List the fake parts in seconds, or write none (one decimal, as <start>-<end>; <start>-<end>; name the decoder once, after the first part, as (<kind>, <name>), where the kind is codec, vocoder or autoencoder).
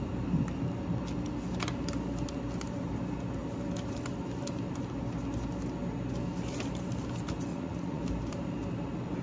7.5-8.0 (vocoder, Vocos)